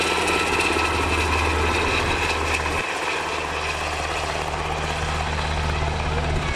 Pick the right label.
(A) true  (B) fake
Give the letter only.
A